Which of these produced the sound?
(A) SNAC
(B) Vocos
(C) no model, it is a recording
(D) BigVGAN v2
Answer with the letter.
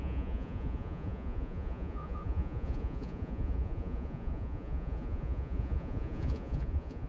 B